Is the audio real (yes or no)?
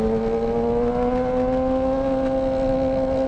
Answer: yes